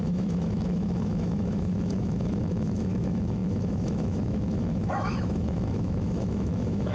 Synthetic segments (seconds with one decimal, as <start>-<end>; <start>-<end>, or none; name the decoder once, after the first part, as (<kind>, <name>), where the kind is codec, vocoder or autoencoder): 0.0-6.9 (autoencoder, DAC-VAE)